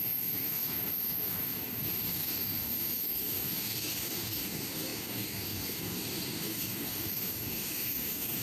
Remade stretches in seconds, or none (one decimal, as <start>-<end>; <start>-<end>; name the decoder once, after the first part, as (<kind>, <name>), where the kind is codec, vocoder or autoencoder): 0.0-8.4 (codec, DAC)